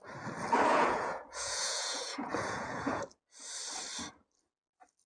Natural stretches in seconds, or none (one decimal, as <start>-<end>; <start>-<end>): 0.0-0.7; 3.0-5.1